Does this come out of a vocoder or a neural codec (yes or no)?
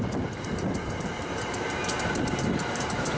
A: yes